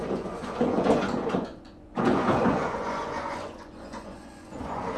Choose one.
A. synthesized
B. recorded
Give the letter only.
A